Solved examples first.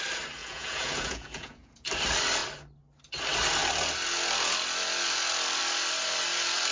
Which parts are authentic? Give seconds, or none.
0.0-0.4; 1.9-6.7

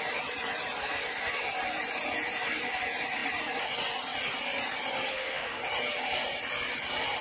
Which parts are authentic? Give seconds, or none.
0.0-5.1; 5.6-7.2

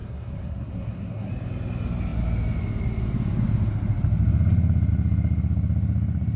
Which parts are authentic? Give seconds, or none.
1.3-6.4

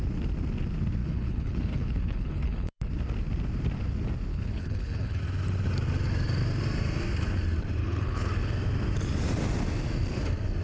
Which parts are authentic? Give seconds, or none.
0.0-1.0; 2.9-4.3; 5.2-7.8; 8.3-10.6

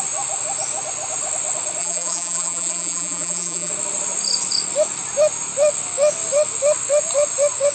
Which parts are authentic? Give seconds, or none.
0.0-1.8; 3.7-7.7

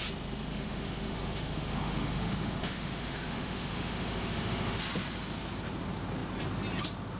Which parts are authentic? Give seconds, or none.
0.0-0.5; 4.8-7.2